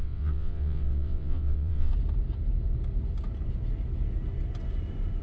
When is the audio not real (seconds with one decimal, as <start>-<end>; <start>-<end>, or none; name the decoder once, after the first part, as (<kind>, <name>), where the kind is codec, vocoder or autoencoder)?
0.0-1.9 (vocoder, WaveNeXt)